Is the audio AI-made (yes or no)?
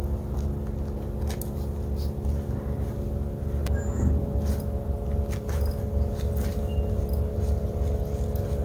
no